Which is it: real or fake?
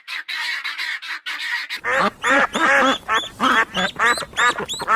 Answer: real